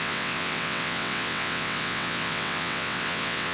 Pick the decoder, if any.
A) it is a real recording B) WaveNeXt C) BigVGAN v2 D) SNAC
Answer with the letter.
B